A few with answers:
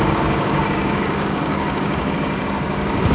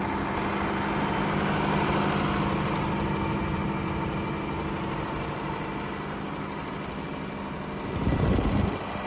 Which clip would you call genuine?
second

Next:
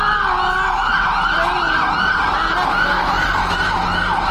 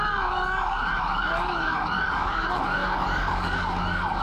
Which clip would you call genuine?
first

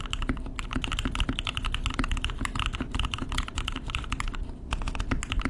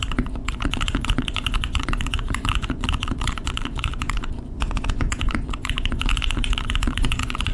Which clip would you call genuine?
first